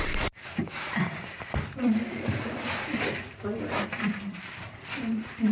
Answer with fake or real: fake